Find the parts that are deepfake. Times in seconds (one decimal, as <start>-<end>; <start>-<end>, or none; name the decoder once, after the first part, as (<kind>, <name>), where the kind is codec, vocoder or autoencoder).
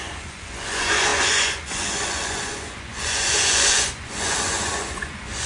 0.0-5.5 (vocoder, Vocos)